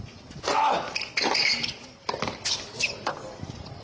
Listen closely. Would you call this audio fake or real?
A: real